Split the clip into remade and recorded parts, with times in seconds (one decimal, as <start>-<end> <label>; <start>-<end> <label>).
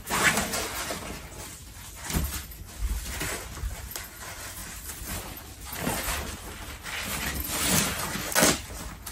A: 0.0-9.1 recorded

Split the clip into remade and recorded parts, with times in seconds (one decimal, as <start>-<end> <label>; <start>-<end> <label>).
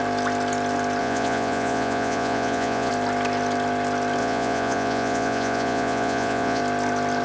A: 0.0-1.0 recorded; 1.0-2.9 remade; 2.9-4.2 recorded; 4.2-6.6 remade; 6.6-7.2 recorded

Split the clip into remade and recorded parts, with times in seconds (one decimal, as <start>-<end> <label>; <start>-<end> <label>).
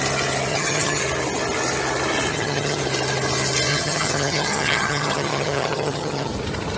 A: 0.0-0.5 recorded; 0.5-1.0 remade; 1.0-2.3 recorded; 2.3-2.8 remade; 2.8-3.7 recorded; 3.7-6.3 remade; 6.3-6.8 recorded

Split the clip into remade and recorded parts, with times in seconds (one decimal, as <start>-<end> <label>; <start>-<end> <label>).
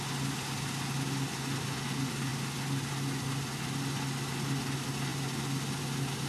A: 0.0-6.3 recorded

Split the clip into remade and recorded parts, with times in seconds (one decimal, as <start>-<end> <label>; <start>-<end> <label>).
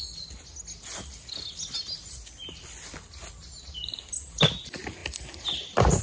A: 0.0-6.0 recorded